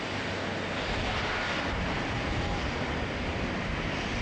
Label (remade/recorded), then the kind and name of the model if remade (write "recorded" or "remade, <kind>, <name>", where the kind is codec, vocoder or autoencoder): recorded